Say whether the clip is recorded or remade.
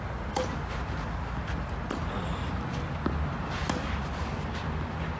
recorded